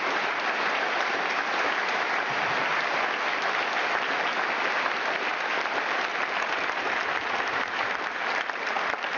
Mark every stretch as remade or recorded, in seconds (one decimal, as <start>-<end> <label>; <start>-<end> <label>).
0.0-5.3 recorded; 5.3-8.3 remade; 8.3-9.2 recorded